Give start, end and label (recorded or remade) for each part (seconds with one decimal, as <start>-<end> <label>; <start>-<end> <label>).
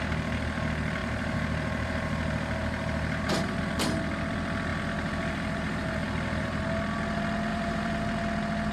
0.0-1.0 recorded; 1.0-3.8 remade; 3.8-4.7 recorded; 4.7-6.6 remade; 6.6-7.5 recorded; 7.5-8.2 remade; 8.2-8.7 recorded